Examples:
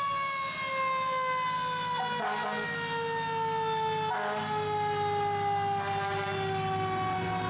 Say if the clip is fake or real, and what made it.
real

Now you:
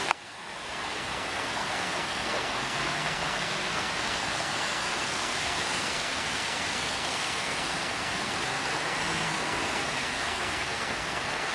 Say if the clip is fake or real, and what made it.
fake, codec, SNAC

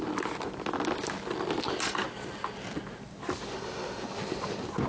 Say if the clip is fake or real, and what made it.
real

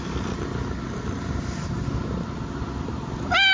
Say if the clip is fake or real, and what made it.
real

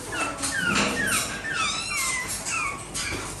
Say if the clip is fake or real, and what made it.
real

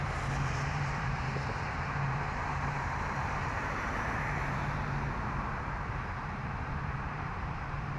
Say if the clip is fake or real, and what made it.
fake, vocoder, BigVGAN v2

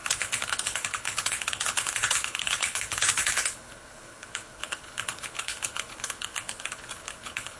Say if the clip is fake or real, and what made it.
fake, codec, HILCodec